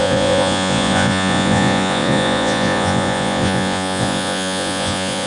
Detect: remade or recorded remade